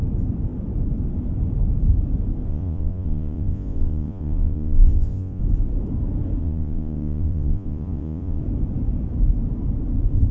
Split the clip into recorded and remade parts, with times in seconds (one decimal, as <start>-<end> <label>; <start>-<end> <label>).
0.0-2.5 recorded; 2.5-5.4 remade; 5.4-6.4 recorded; 6.4-8.4 remade; 8.4-10.3 recorded